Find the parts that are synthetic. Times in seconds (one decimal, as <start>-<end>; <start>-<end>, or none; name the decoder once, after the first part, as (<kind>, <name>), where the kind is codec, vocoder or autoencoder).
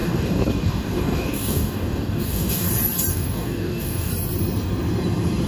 0.0-2.7 (codec, DAC); 3.1-4.1